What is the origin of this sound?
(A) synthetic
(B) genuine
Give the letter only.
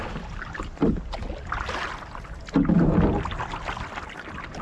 B